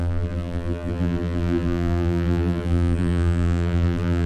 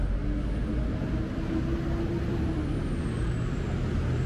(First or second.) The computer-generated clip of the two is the first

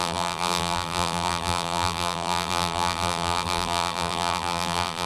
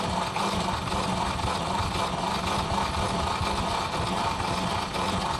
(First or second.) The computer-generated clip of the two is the first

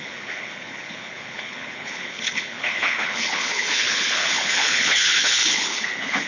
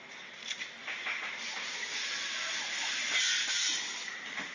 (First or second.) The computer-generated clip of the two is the first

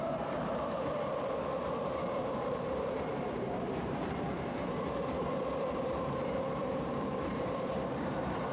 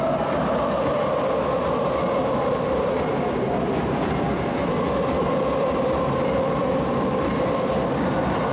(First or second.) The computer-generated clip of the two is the first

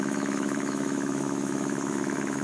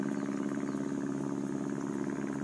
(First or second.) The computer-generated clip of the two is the first